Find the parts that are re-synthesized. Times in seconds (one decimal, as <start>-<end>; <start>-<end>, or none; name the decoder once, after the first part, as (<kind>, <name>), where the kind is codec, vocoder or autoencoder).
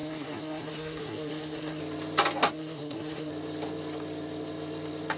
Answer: 0.0-1.8 (codec, SNAC); 2.5-3.3